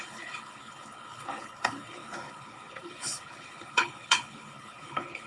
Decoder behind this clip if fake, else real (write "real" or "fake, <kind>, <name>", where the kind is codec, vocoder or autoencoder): fake, codec, HILCodec